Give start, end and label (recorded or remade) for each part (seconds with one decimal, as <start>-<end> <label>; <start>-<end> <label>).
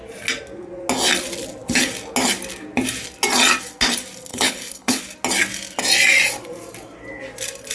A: 0.0-4.3 recorded; 4.3-5.0 remade; 5.0-7.7 recorded